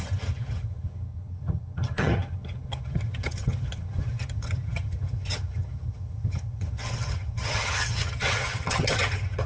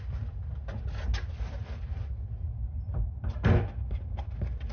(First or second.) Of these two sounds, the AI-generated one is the first